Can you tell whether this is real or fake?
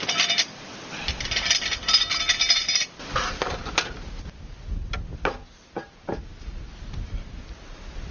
real